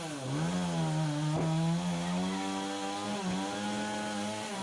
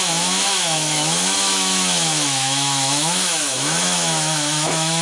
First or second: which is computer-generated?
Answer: second